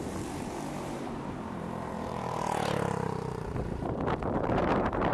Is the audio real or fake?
fake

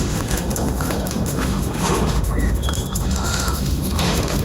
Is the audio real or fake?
fake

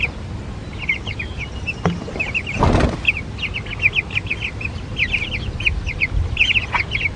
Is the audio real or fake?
real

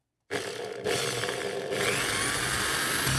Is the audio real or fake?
real